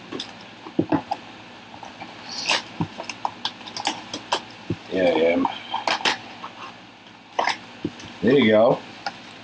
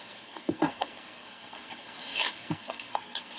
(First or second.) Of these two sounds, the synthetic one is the second